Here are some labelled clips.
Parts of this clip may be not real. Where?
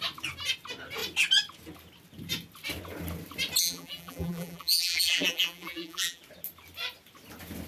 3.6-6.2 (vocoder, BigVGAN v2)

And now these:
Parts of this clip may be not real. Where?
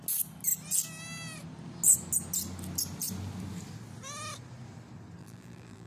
5.2-5.9 (vocoder, BigVGAN v2)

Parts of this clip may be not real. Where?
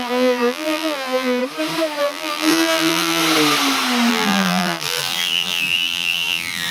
0.0-1.4 (vocoder, BigVGAN v2); 2.0-3.2; 4.1-6.7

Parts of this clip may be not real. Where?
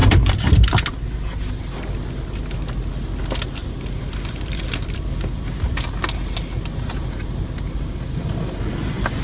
0.0-0.9 (vocoder, BigVGAN v2); 3.6-5.7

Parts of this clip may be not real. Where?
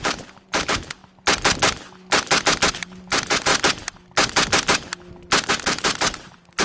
0.0-1.0 (vocoder, BigVGAN v2); 2.7-3.5; 5.5-6.6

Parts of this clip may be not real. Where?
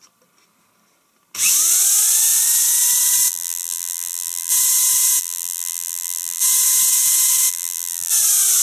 3.3-4.5 (vocoder, BigVGAN v2); 5.2-6.4; 7.5-8.1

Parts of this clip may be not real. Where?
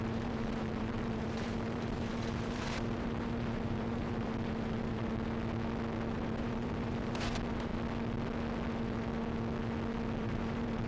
0.0-5.1 (vocoder, BigVGAN v2); 6.1-7.7; 10.2-10.9